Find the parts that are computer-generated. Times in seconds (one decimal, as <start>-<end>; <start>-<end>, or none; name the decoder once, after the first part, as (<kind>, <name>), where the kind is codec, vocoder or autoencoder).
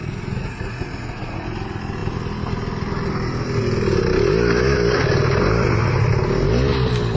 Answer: 0.0-1.4 (vocoder, Vocos)